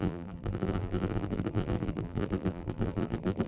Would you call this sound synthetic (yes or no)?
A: yes